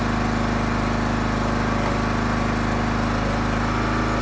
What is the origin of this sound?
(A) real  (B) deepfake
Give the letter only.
A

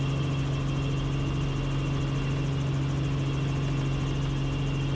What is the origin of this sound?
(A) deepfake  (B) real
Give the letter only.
B